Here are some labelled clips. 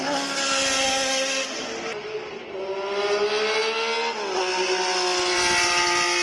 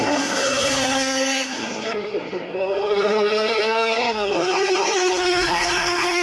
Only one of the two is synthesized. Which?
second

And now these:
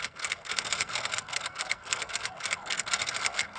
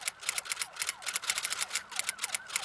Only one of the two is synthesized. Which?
first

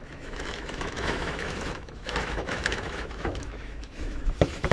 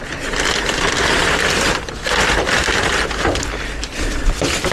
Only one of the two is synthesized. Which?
first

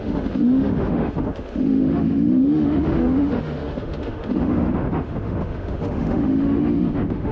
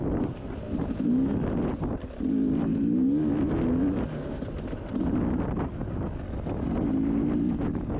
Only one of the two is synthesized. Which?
first